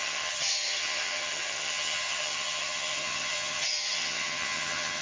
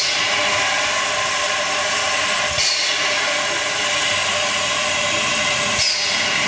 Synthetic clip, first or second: first